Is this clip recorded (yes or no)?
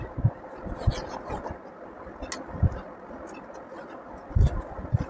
yes